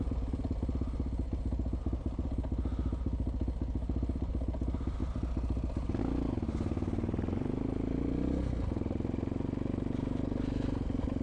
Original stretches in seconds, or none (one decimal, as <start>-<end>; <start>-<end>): 0.0-11.2